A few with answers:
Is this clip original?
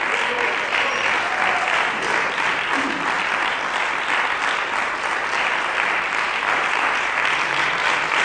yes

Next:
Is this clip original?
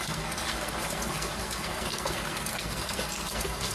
no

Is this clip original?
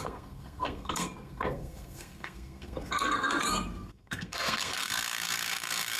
no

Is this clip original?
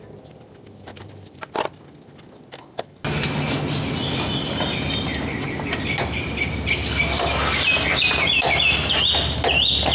yes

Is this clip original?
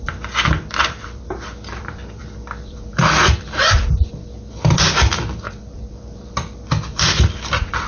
no